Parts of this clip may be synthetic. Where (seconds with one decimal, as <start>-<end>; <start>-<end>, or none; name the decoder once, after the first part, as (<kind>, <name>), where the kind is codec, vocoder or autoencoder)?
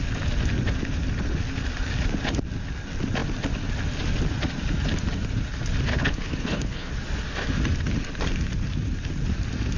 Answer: 5.9-6.9 (codec, HILCodec)